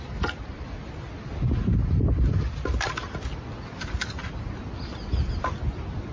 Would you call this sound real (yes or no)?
yes